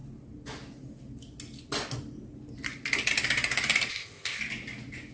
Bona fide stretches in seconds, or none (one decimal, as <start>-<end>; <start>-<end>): 0.0-3.9; 4.4-5.1